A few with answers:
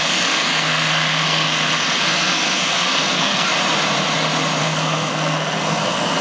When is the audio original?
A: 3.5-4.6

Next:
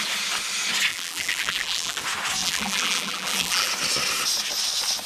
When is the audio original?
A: 0.0-0.9; 2.0-2.4; 3.7-5.1